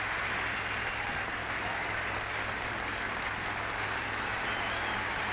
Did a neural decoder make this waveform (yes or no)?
no